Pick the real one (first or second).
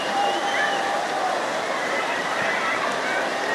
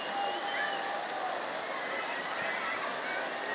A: second